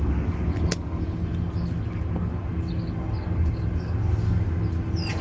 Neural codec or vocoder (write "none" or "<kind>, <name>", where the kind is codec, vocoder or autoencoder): none